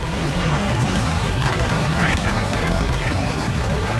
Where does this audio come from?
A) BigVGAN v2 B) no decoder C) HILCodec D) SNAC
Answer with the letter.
D